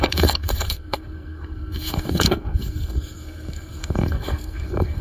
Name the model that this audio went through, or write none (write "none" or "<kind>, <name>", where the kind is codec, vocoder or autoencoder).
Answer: codec, SNAC